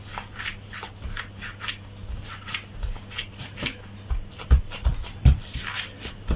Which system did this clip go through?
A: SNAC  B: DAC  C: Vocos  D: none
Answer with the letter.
D